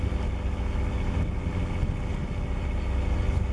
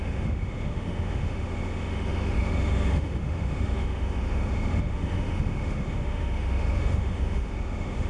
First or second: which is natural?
first